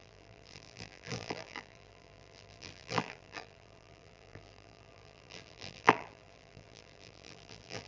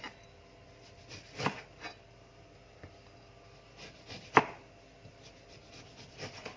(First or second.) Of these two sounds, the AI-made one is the first